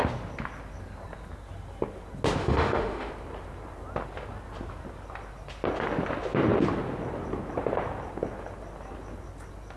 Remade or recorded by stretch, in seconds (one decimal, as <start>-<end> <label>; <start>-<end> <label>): 0.0-2.4 recorded; 2.4-3.1 remade; 3.1-9.8 recorded